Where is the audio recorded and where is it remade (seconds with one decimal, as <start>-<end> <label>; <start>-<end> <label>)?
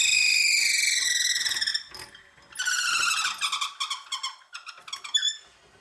0.0-5.8 recorded